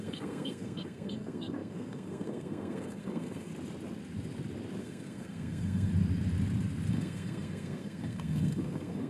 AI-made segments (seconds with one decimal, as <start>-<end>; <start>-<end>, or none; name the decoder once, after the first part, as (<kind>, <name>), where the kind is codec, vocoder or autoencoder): 0.0-3.5 (codec, SNAC); 4.8-5.9; 6.9-9.1